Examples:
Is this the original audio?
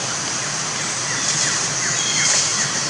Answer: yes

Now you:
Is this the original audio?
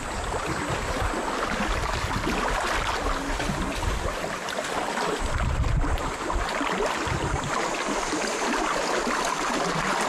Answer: yes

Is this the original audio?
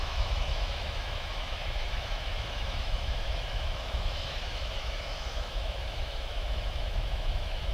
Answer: no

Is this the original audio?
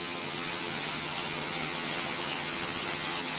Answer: no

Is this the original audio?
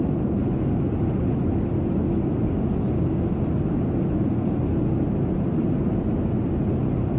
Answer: yes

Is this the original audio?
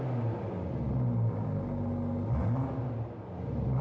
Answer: yes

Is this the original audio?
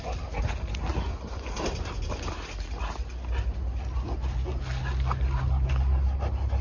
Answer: yes